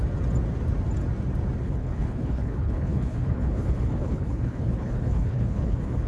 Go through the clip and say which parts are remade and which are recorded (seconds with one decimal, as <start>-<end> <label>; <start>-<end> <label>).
0.0-1.6 recorded; 1.6-6.1 remade